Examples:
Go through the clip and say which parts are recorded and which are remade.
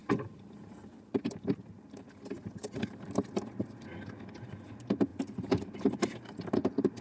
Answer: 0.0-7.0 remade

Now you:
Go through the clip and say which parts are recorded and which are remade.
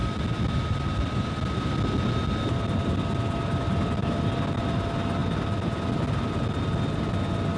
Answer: 0.0-7.6 recorded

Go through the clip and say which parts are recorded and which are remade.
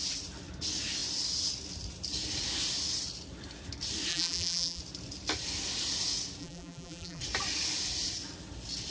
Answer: 0.0-4.1 recorded; 4.1-4.8 remade; 4.8-6.4 recorded; 6.4-7.2 remade; 7.2-8.9 recorded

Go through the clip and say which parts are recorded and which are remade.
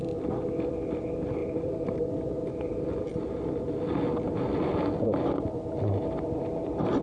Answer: 0.0-1.4 recorded; 1.4-2.1 remade; 2.1-7.0 recorded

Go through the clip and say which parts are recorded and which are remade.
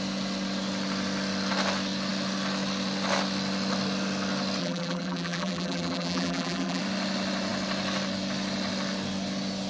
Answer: 0.0-4.6 recorded; 4.6-6.8 remade; 6.8-9.7 recorded